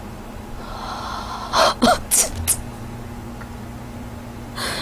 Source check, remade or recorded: recorded